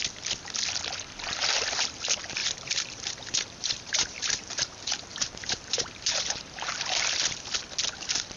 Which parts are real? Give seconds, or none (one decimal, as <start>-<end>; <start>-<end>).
0.0-2.4; 6.8-8.4